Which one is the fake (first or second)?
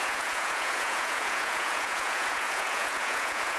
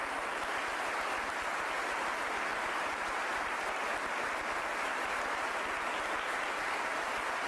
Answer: first